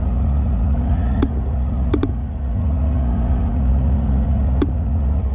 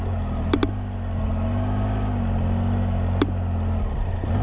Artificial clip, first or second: first